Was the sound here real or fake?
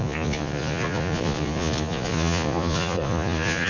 fake